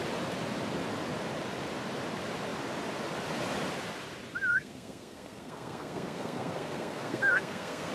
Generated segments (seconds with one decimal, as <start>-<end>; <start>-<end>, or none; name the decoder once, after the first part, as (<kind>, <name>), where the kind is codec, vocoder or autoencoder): 4.5-7.9 (codec, SNAC)